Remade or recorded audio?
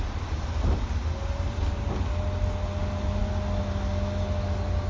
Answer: recorded